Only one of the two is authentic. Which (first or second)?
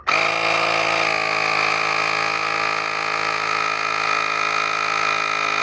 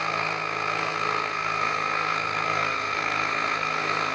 first